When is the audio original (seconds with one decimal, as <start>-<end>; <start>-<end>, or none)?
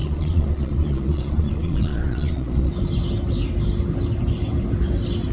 2.7-5.3